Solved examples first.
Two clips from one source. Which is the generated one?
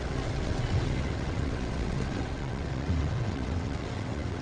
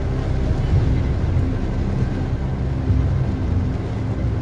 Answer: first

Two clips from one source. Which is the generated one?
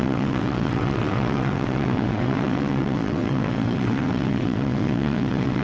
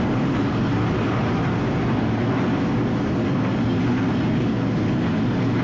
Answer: first